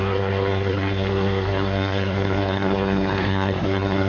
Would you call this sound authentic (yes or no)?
no